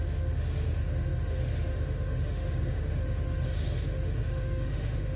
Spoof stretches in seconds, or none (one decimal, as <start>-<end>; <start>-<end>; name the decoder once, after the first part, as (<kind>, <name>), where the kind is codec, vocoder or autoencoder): 0.0-5.2 (autoencoder, DAC-VAE)